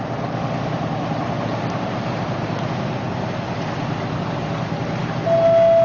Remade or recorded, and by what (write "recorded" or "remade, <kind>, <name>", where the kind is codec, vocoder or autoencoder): recorded